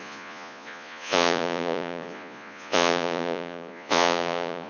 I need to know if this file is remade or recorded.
remade